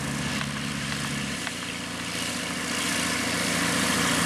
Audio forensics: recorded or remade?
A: recorded